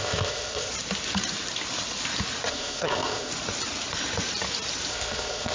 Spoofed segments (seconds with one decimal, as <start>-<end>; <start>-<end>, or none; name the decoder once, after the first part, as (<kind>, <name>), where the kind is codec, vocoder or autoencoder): 0.0-0.7 (codec, ZipCodec); 2.5-3.3; 4.9-5.5